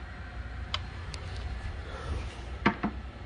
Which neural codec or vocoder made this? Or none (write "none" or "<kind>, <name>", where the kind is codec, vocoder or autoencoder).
none